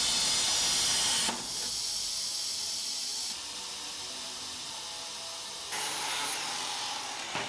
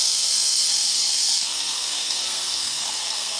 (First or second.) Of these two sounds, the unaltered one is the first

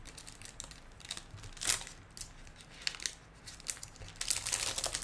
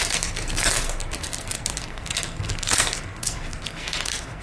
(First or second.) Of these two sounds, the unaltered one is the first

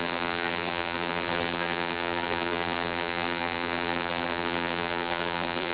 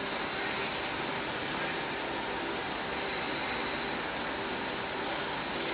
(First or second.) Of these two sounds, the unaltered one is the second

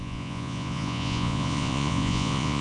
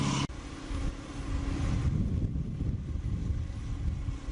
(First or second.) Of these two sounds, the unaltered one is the second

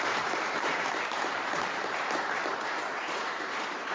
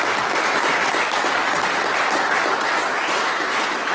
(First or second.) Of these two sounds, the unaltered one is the second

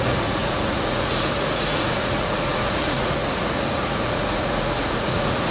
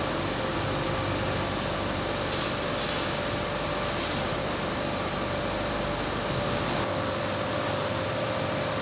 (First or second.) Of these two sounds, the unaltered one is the second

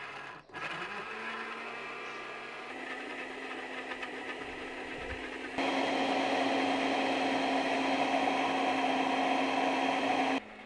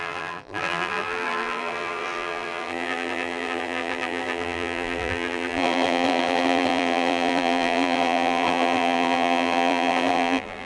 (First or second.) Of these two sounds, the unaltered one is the first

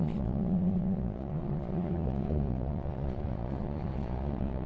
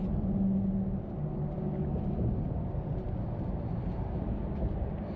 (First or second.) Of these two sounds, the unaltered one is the second